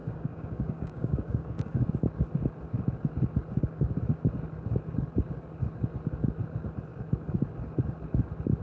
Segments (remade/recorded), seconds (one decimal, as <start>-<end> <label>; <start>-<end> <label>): 0.0-1.9 remade; 1.9-8.6 recorded